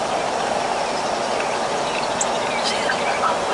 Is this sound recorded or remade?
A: recorded